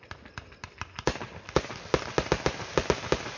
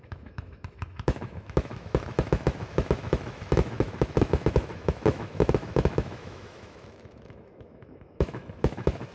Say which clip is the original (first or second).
first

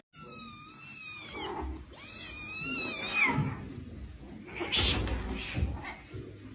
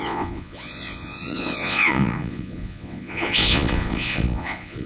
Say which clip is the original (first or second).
first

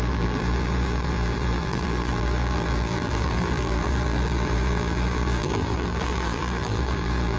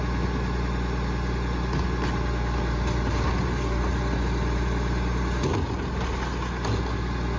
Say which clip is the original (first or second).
second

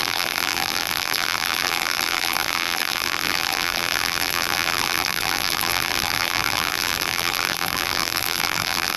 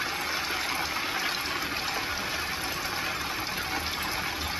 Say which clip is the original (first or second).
second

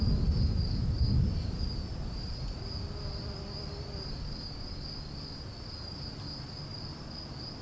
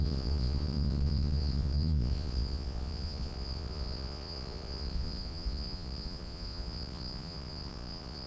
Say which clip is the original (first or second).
first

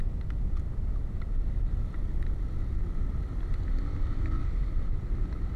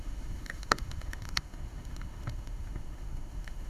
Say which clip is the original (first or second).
first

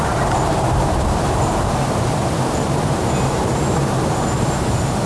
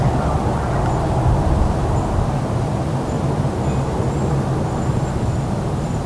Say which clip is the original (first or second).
second